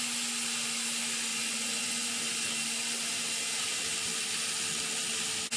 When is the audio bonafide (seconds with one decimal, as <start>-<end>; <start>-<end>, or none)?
0.0-1.3; 2.2-5.6